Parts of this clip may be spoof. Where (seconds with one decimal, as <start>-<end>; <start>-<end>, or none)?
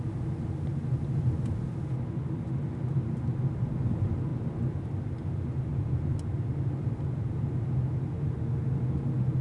none